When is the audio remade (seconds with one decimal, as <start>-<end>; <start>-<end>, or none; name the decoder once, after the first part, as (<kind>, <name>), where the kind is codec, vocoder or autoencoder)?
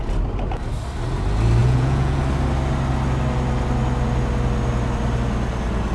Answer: 1.6-2.2 (vocoder, Vocos)